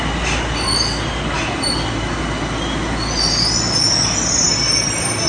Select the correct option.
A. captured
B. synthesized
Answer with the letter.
A